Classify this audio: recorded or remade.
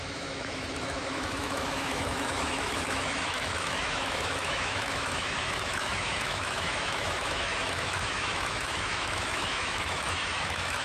remade